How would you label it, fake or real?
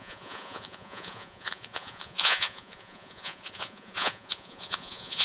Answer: fake